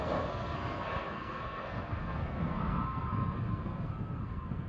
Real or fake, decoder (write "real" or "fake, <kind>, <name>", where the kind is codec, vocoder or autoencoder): fake, codec, SNAC